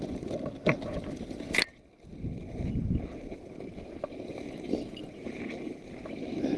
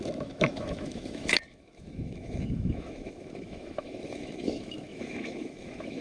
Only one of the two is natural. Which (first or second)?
first